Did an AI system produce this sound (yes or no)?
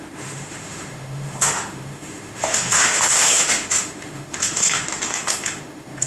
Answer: yes